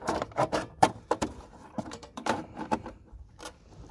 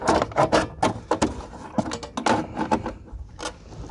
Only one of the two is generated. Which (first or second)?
first